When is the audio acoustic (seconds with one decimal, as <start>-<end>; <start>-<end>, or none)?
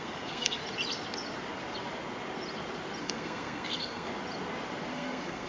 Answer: 0.6-3.0; 4.1-4.9